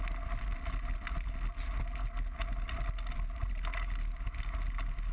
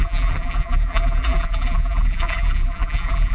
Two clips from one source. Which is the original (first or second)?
first